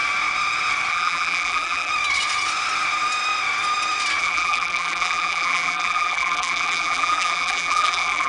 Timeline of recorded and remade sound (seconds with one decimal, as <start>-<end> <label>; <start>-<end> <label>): 0.0-0.9 recorded; 0.9-1.9 remade; 1.9-4.2 recorded; 4.2-8.3 remade